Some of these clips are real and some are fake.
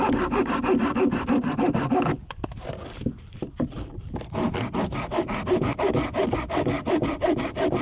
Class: real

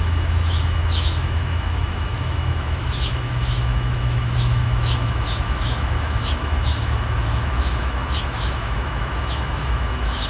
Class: fake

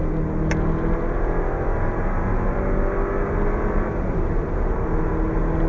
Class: real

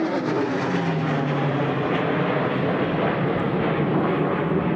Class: real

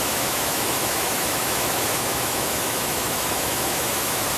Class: fake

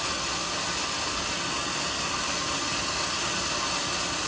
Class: real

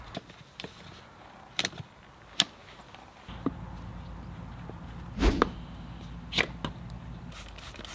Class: real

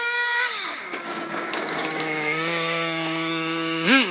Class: fake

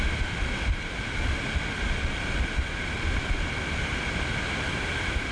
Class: real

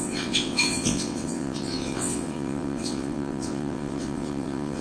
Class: fake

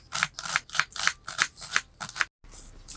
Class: real